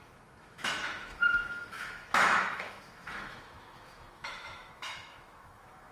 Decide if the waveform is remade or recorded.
remade